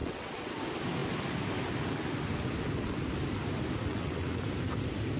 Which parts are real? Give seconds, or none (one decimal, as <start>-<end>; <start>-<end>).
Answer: 0.6-3.9; 4.4-5.2